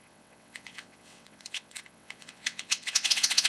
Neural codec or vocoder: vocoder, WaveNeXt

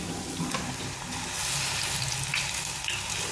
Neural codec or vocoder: none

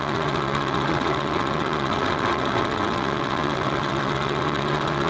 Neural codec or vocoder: vocoder, WaveNeXt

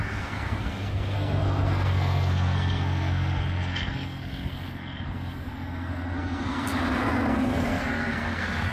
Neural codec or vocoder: codec, SNAC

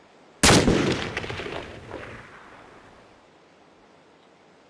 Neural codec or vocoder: none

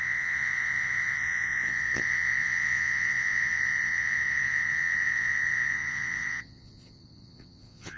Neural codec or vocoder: vocoder, Vocos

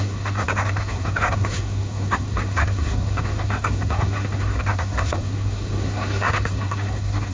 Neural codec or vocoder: codec, SNAC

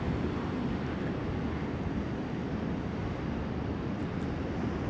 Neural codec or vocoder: none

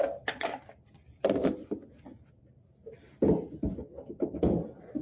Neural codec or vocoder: none